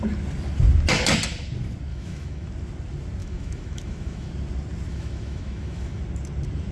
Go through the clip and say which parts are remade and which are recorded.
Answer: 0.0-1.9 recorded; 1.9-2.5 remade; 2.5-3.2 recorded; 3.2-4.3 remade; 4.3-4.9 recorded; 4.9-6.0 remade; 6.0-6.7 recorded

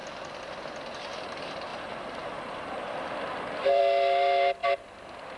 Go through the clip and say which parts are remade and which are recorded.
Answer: 0.0-0.6 remade; 0.6-1.7 recorded; 1.7-3.8 remade; 3.8-4.6 recorded; 4.6-5.4 remade